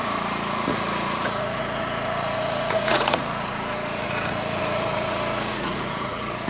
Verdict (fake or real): fake